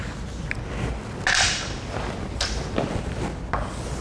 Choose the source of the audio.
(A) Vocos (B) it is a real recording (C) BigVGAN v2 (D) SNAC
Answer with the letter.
B